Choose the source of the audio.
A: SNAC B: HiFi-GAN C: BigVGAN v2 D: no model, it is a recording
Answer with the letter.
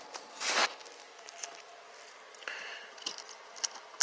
D